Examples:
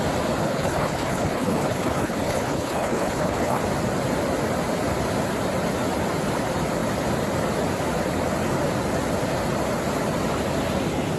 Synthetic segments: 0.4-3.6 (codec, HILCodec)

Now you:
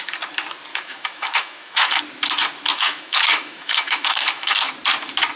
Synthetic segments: 0.7-2.0 (autoencoder, DAC-VAE); 2.7-4.7

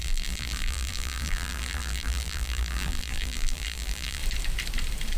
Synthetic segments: 0.0-4.2 (vocoder, BigVGAN v2)